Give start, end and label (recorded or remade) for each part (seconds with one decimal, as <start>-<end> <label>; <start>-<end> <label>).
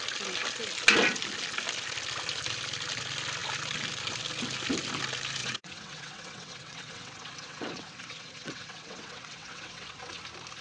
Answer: 0.0-5.4 recorded; 5.4-10.2 remade; 10.2-10.6 recorded